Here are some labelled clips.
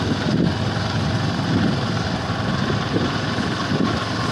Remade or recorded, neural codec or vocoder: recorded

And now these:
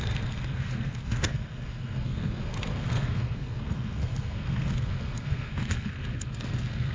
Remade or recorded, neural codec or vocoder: remade, codec, SNAC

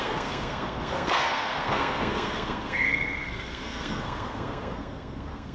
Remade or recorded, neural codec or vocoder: remade, codec, SNAC